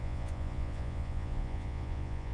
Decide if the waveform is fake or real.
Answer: fake